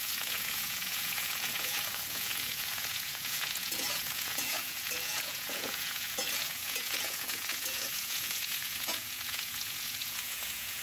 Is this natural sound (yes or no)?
no